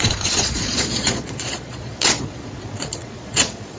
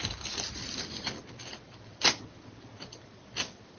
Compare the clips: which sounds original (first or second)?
second